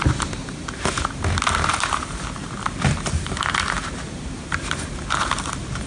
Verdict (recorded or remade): recorded